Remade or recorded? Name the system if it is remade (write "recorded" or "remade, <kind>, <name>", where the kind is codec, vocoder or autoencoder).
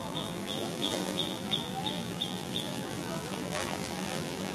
remade, vocoder, BigVGAN v2